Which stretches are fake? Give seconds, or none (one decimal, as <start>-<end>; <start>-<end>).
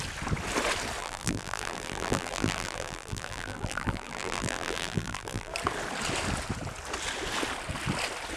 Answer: 1.0-5.5